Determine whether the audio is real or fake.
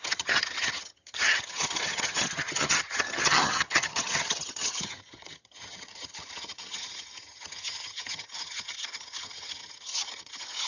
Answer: fake